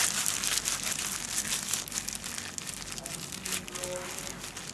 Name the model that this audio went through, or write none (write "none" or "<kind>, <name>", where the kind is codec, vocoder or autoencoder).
none